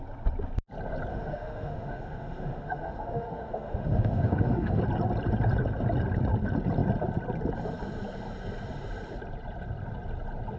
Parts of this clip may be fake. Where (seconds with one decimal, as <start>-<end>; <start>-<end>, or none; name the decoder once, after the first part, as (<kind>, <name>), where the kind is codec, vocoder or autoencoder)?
1.1-4.8 (autoencoder, DAC-VAE)

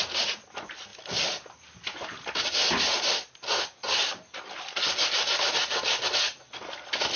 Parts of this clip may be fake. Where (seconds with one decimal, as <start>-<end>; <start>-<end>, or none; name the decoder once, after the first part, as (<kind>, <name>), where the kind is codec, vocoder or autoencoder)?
none

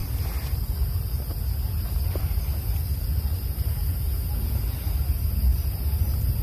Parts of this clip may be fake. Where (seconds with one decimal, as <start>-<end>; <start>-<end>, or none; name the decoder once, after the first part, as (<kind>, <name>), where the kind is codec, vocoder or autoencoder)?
none

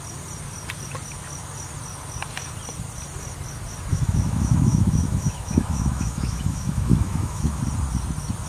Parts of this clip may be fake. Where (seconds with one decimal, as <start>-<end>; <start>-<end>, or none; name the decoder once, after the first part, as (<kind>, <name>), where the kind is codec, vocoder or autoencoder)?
3.9-7.6 (autoencoder, DAC-VAE)